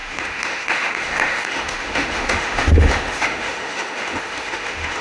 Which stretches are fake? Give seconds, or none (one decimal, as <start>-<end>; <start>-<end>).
0.0-5.0